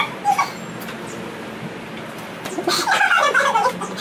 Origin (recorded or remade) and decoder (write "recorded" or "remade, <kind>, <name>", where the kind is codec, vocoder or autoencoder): recorded